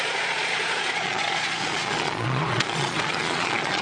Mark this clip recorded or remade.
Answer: remade